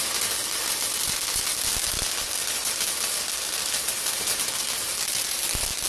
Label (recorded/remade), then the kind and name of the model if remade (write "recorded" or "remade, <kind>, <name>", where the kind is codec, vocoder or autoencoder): recorded